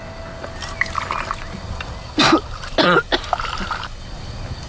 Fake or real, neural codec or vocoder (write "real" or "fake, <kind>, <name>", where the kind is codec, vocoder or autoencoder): real